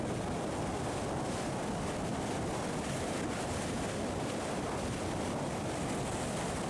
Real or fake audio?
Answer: real